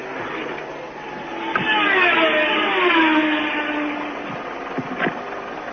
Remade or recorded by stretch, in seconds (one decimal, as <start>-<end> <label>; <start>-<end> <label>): 0.0-5.7 recorded